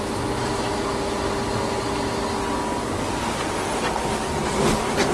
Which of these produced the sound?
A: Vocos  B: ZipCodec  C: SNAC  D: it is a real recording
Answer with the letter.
D